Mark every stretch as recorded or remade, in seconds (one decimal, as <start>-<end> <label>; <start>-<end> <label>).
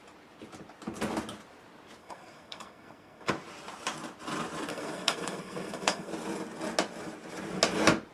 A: 0.0-2.0 recorded; 2.0-3.3 remade; 3.3-4.7 recorded; 4.7-6.1 remade; 6.1-8.1 recorded